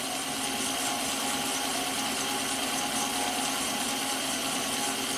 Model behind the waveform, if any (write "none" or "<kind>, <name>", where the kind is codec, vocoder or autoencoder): none